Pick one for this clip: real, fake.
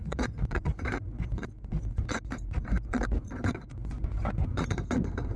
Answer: fake